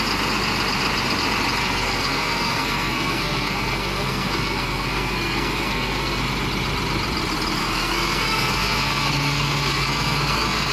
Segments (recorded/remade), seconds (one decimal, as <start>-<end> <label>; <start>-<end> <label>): 0.0-1.6 recorded; 1.6-6.2 remade; 6.2-7.6 recorded; 7.6-10.7 remade